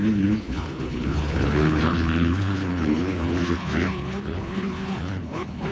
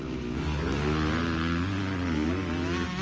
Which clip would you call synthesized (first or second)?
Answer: first